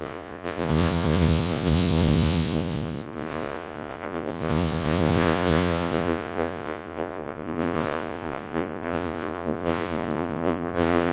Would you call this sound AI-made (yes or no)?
yes